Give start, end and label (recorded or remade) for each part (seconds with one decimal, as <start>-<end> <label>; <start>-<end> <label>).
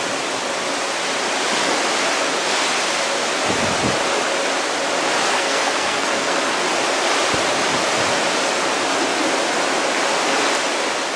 0.0-5.3 recorded; 5.3-6.4 remade; 6.4-11.2 recorded